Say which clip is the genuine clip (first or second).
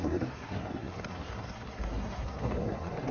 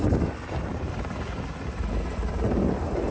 second